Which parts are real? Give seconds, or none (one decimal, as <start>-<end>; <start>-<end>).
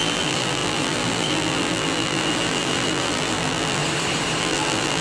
3.8-4.4